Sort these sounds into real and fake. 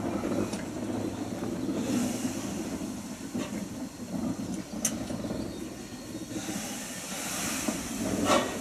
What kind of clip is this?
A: real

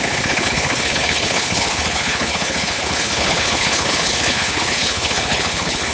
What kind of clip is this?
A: fake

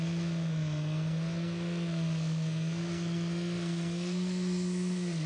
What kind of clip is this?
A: fake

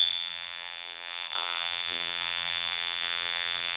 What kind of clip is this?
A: fake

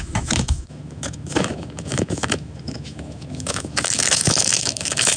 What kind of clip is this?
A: fake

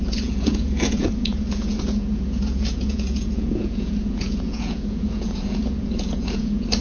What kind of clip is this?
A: fake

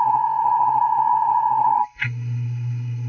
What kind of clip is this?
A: fake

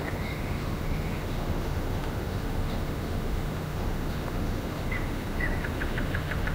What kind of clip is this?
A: fake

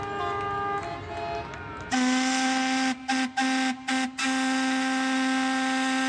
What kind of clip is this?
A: real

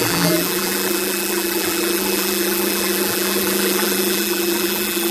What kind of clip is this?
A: fake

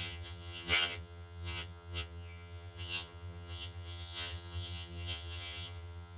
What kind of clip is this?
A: fake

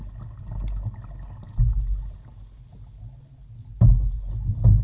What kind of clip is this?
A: real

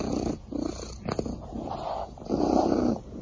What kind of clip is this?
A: real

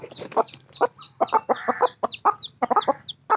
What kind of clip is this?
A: fake